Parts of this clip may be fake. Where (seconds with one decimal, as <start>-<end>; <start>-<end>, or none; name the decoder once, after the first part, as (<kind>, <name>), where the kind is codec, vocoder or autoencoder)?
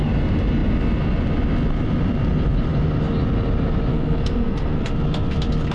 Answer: 3.9-4.9 (codec, SNAC)